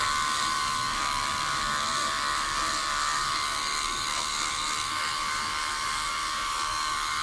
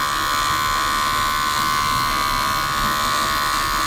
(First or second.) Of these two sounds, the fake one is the first